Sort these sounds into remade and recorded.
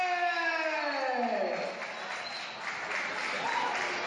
recorded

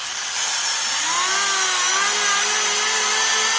recorded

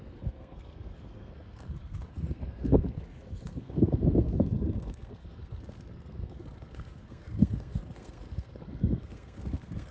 remade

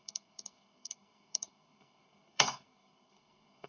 remade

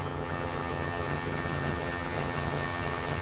remade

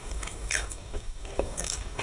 remade